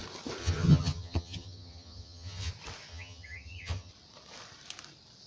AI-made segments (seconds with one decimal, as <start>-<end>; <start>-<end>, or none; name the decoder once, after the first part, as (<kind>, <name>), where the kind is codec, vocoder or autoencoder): 0.4-2.5 (vocoder, HiFi-GAN); 2.9-3.9